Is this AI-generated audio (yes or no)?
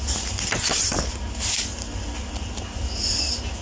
no